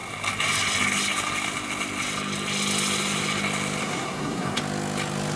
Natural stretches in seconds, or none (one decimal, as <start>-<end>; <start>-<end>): 0.0-3.8; 4.6-5.4